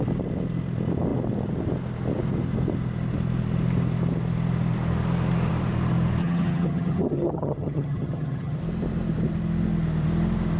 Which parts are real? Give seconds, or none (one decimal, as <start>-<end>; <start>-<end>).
0.0-6.2; 8.6-10.6